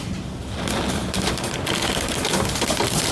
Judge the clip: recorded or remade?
recorded